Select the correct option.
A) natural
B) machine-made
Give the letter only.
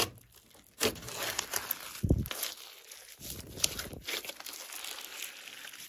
A